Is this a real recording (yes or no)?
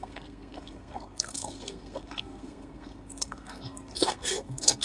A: no